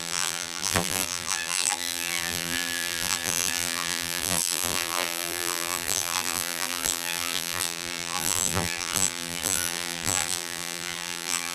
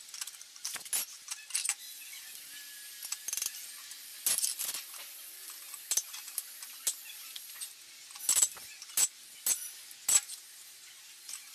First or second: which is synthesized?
first